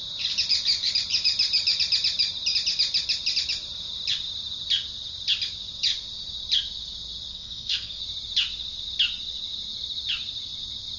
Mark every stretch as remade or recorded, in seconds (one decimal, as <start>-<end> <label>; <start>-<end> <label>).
0.0-7.3 recorded; 7.3-8.0 remade; 8.0-11.0 recorded